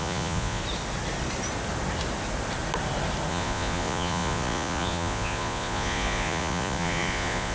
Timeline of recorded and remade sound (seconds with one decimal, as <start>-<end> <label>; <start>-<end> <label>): 0.0-0.6 remade; 0.6-3.3 recorded; 3.3-7.5 remade

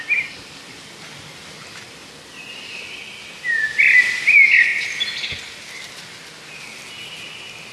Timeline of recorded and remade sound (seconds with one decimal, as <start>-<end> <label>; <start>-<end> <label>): 0.0-7.7 recorded

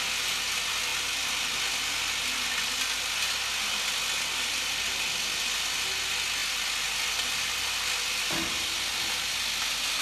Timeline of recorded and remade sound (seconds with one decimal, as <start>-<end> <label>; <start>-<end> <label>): 0.0-10.0 recorded

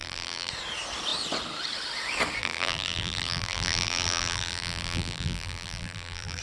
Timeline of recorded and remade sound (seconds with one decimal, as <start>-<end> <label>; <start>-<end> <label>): 0.0-0.5 remade; 0.5-2.4 recorded; 2.4-6.4 remade

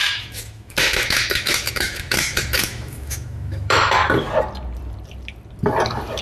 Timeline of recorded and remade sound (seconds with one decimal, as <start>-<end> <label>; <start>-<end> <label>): 0.0-4.0 remade; 4.0-6.2 recorded

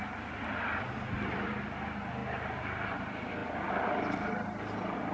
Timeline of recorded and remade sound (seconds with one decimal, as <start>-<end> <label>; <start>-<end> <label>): 0.0-5.1 recorded